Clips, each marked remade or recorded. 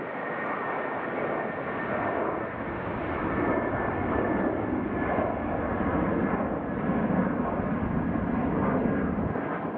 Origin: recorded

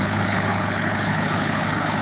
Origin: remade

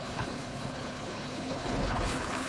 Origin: remade